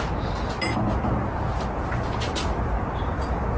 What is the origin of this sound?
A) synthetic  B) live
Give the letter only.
B